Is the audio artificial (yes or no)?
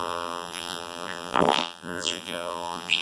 yes